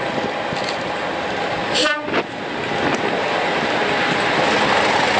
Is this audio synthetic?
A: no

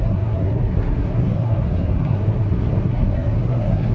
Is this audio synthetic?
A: yes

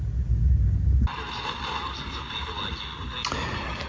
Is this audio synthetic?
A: no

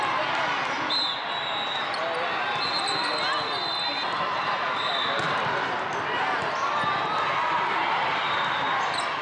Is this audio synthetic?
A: no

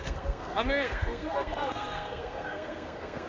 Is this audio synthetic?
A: yes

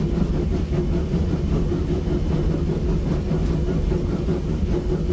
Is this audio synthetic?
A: no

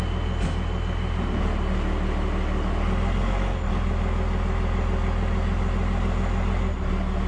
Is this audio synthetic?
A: no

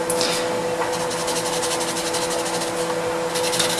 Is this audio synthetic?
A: no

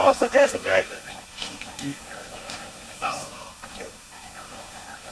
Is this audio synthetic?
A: yes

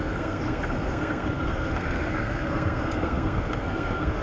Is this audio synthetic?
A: yes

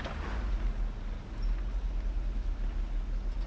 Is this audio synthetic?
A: no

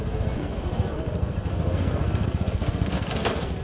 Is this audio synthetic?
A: yes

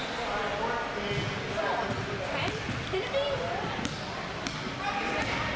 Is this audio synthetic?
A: no